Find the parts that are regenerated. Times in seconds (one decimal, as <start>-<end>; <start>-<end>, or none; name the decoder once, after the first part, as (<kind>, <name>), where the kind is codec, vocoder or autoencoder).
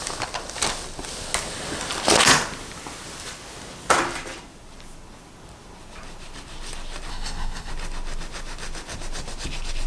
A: 7.1-7.7 (codec, SNAC)